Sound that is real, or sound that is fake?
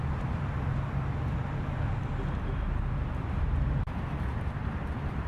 fake